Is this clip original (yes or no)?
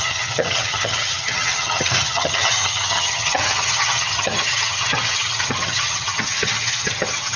no